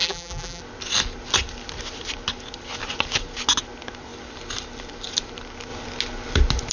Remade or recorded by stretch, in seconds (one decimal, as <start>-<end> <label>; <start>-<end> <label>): 0.0-0.6 remade; 0.6-6.7 recorded